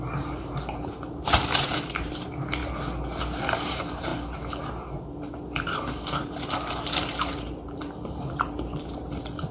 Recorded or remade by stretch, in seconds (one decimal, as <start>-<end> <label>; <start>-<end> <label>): 0.0-2.6 remade; 2.6-3.2 recorded; 3.2-4.1 remade; 4.1-4.6 recorded; 4.6-9.5 remade